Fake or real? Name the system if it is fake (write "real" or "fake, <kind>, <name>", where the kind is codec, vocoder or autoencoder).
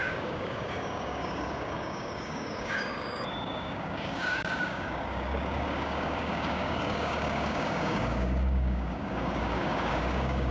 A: fake, codec, DAC